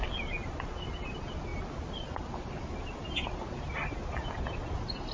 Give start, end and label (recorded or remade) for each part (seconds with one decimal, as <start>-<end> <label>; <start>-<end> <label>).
0.0-5.1 recorded